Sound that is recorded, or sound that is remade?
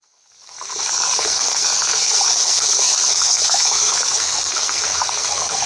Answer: remade